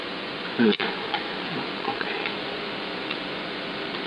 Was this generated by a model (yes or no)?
yes